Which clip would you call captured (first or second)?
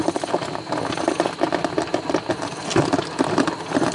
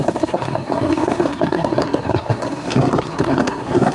first